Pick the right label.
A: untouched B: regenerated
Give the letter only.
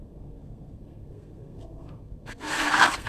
B